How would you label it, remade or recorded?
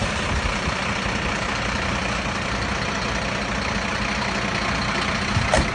recorded